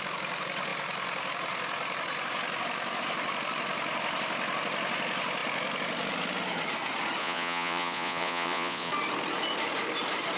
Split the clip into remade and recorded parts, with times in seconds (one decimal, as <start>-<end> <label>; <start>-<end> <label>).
0.0-7.2 recorded; 7.2-8.9 remade; 8.9-10.4 recorded